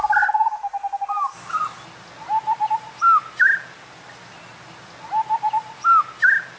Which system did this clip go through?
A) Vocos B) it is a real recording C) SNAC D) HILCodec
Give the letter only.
B